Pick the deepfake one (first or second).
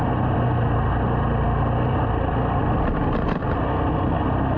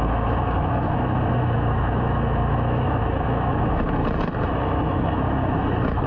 second